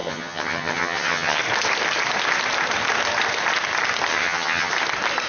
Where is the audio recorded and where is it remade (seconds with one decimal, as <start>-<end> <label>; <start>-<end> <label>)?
0.0-1.4 remade; 1.4-4.1 recorded; 4.1-4.7 remade; 4.7-5.3 recorded